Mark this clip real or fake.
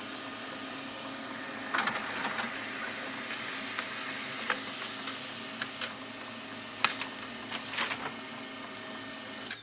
real